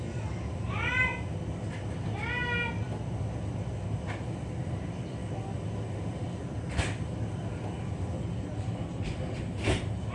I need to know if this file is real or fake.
real